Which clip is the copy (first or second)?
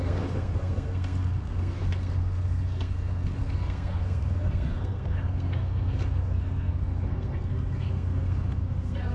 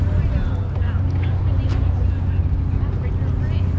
first